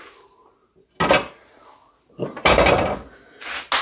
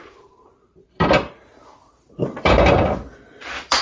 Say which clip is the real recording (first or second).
first